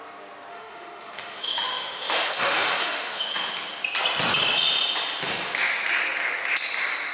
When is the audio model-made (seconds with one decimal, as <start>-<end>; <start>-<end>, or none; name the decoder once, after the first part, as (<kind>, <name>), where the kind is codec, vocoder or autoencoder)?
0.5-3.5 (autoencoder, DAC-VAE)